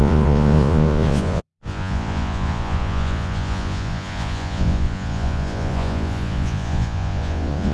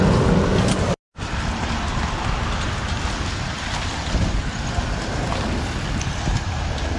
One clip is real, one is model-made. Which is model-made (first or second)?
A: first